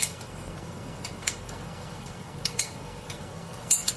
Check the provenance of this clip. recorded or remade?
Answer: remade